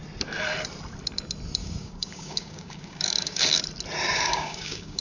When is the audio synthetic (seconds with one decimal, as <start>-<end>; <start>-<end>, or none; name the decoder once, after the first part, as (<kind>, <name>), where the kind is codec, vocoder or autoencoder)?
1.6-3.6 (codec, DAC); 4.1-5.0